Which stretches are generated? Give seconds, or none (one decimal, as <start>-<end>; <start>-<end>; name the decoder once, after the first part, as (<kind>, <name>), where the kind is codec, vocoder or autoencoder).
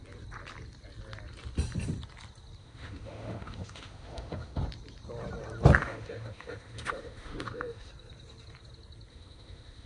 2.6-4.6 (autoencoder, DAC-VAE); 5.8-7.9; 9.1-9.9